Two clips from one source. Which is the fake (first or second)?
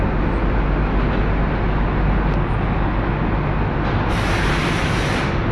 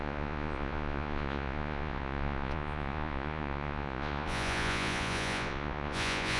second